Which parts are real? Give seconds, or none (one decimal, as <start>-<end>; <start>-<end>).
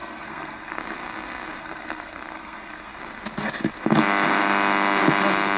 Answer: 0.8-1.6; 2.9-5.6